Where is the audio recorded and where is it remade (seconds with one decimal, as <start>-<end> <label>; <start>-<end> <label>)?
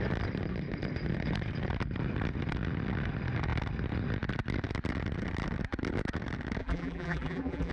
0.0-6.6 recorded; 6.6-7.7 remade